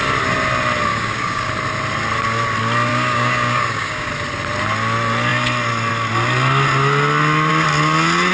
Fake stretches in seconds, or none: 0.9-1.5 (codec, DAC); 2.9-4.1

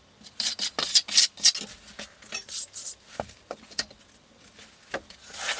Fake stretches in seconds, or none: none